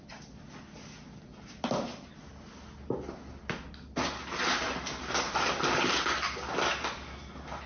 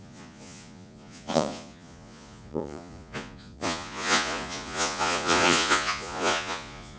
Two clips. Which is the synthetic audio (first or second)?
second